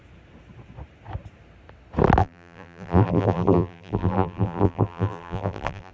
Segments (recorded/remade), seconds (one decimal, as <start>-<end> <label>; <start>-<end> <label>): 0.0-2.2 recorded; 2.2-5.9 remade

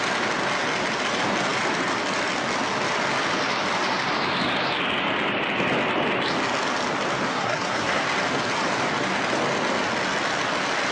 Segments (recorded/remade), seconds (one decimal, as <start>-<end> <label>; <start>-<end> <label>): 0.0-7.3 recorded; 7.3-8.0 remade; 8.0-10.9 recorded

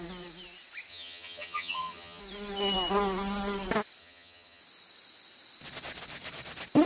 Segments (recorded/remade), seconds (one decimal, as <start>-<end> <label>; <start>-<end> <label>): 0.0-0.9 recorded; 0.9-2.2 remade; 2.2-4.0 recorded; 4.0-4.6 remade; 4.6-6.9 recorded

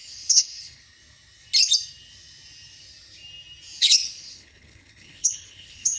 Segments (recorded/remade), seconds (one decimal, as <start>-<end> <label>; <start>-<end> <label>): 0.0-0.8 remade; 0.8-3.8 recorded; 3.8-6.0 remade

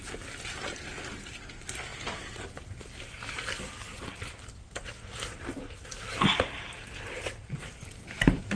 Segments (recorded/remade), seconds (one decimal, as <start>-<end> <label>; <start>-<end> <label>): 0.0-8.6 recorded

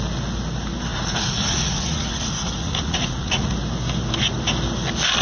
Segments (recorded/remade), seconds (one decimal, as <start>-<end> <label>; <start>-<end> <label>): 0.0-0.9 recorded; 0.9-3.5 remade; 3.5-5.2 recorded